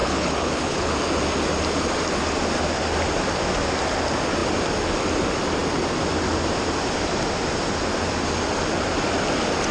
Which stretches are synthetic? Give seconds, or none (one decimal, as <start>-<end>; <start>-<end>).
0.0-0.9